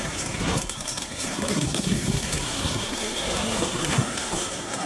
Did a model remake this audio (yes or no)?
yes